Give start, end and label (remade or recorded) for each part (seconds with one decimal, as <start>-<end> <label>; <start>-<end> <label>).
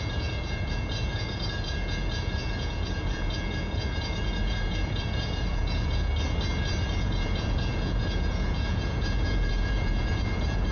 0.0-6.1 remade; 6.1-7.0 recorded; 7.0-10.7 remade